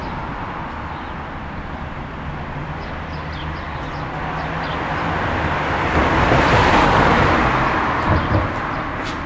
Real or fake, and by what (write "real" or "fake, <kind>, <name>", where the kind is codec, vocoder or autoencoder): real